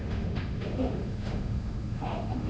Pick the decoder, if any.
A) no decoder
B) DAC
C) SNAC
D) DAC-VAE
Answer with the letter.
D